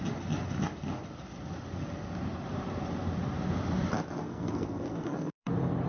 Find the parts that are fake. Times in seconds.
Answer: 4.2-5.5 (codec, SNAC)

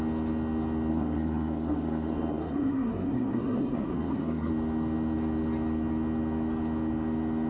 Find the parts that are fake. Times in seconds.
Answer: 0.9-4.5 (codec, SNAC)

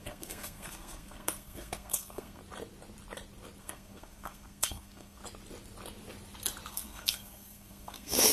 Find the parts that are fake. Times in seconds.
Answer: 0.0-2.4 (codec, SNAC); 3.6-5.2; 6.7-8.3